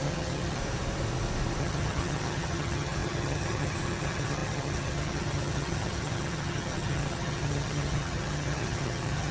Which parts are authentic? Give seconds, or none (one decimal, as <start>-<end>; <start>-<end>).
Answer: 0.6-1.6